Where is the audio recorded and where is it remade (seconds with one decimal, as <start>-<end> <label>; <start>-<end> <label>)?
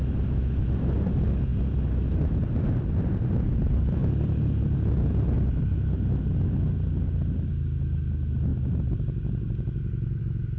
0.0-10.6 recorded